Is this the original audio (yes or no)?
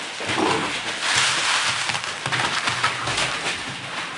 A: yes